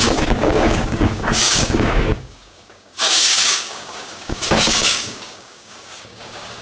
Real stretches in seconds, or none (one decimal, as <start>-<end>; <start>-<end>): none